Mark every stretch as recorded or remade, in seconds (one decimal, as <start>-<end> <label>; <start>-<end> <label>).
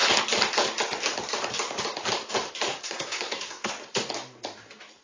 0.0-2.7 recorded; 2.7-3.7 remade; 3.7-5.0 recorded